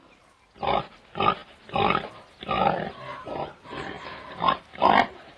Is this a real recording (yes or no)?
yes